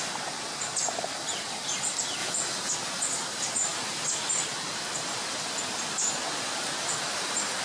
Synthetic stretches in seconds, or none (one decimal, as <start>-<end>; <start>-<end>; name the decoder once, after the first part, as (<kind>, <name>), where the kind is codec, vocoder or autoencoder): 2.2-2.7 (vocoder, Vocos)